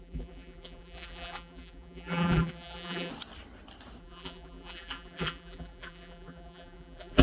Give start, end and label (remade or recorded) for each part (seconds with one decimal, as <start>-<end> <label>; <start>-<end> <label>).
0.0-3.1 remade; 3.1-4.0 recorded; 4.0-7.2 remade